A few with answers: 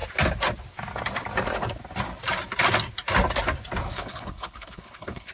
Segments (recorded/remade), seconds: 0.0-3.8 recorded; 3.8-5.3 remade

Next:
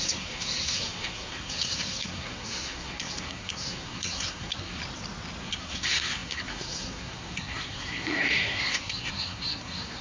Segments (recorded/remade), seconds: 0.0-4.8 remade; 4.8-5.4 recorded; 5.4-10.0 remade

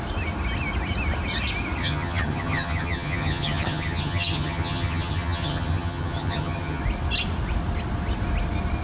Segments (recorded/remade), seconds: 0.0-1.8 recorded; 1.8-6.8 remade; 6.8-8.8 recorded